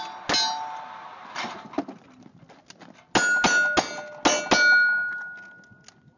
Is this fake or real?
real